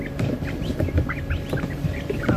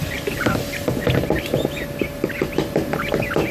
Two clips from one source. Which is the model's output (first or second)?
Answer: first